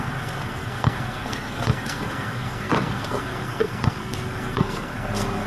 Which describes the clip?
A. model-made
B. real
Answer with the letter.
A